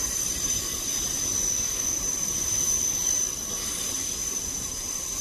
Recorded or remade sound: remade